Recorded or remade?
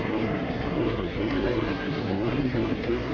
remade